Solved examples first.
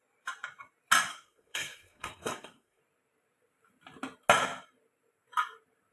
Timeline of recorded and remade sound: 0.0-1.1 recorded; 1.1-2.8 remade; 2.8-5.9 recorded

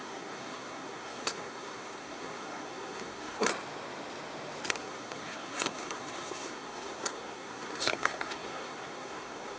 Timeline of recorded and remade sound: 0.0-3.5 remade; 3.5-4.7 recorded; 4.7-9.6 remade

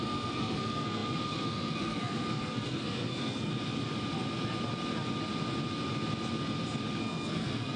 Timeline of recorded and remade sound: 0.0-3.5 remade; 3.5-7.0 recorded; 7.0-7.8 remade

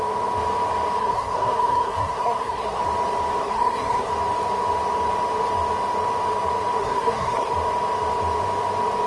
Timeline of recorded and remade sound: 0.0-1.0 recorded; 1.0-2.8 remade; 2.8-3.4 recorded; 3.4-4.1 remade; 4.1-6.8 recorded; 6.8-7.5 remade; 7.5-9.1 recorded

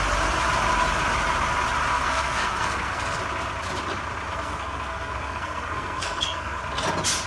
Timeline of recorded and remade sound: 0.0-1.9 recorded; 1.9-3.2 remade; 3.2-4.3 recorded; 4.3-6.6 remade; 6.6-7.3 recorded

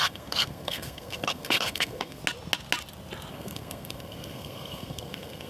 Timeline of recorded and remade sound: 0.0-2.2 remade; 2.2-3.3 recorded; 3.3-5.5 remade

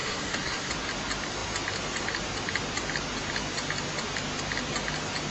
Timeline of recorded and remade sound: 0.0-0.7 remade; 0.7-5.3 recorded